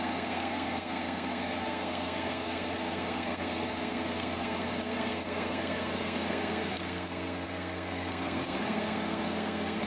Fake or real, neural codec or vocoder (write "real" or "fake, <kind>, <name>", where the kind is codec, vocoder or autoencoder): fake, codec, SNAC